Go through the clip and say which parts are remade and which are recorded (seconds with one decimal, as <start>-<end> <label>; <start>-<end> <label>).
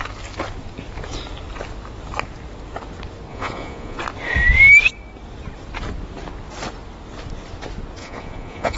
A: 0.0-3.3 recorded; 3.3-4.0 remade; 4.0-8.0 recorded; 8.0-8.8 remade